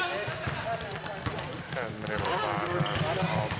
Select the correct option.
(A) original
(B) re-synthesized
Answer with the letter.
A